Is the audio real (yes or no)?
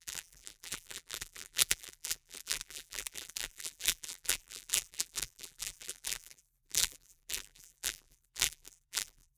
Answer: no